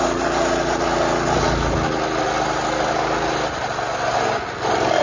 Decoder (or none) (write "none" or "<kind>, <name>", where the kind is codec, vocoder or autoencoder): none